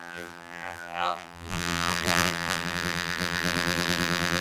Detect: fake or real fake